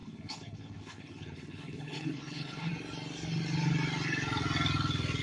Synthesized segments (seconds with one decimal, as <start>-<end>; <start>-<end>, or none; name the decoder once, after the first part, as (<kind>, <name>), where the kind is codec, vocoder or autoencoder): 0.0-2.7 (codec, HILCodec)

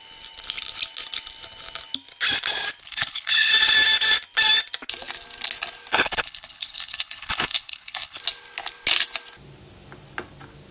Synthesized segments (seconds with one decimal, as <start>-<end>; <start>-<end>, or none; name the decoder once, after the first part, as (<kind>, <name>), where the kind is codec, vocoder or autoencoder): 2.8-3.5 (codec, HILCodec); 5.9-8.2

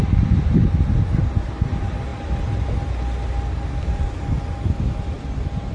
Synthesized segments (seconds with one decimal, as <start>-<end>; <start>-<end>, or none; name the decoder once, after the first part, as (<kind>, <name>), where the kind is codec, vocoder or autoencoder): none